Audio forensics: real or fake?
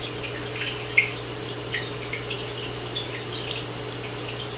real